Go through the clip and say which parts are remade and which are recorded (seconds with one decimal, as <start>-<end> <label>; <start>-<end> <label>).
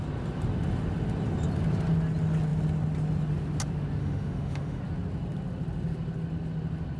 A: 0.0-4.0 recorded; 4.0-4.8 remade; 4.8-7.0 recorded